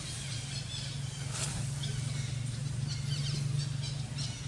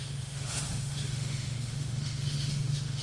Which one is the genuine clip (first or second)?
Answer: first